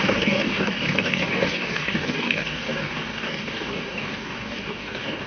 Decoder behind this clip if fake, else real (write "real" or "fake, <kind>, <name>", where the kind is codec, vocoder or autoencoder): fake, codec, DAC